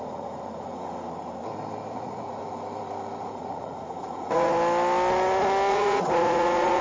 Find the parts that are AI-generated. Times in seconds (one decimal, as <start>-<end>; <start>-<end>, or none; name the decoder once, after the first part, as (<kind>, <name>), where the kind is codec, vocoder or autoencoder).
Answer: 0.0-0.7 (vocoder, Vocos); 1.9-2.4; 3.2-4.5; 5.7-6.8

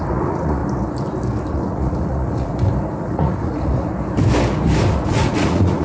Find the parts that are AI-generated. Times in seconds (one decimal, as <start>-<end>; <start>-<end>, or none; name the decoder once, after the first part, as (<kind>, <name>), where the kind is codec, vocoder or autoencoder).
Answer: 0.0-0.6 (vocoder, Vocos); 1.5-2.5; 3.0-3.9; 4.9-5.8